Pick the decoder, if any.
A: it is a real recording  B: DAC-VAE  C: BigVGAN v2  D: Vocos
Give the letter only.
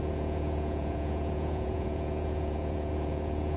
D